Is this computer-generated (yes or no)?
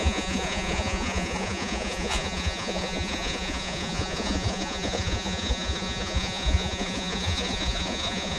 yes